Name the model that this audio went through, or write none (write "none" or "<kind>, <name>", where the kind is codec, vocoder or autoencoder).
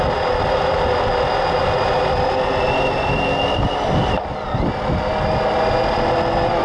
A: none